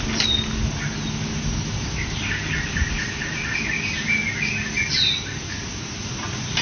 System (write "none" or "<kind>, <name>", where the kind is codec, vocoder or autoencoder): none